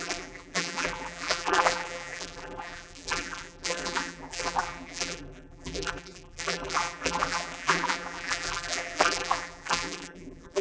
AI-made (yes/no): yes